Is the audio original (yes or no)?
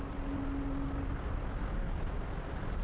yes